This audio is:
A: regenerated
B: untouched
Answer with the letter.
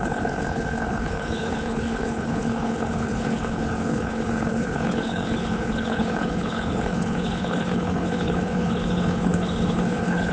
A